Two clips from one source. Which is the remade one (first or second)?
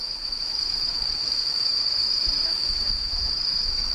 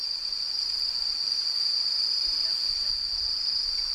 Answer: first